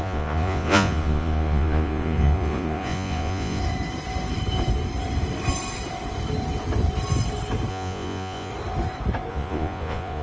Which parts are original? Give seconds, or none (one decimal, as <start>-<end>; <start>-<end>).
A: 3.6-7.7; 8.5-9.3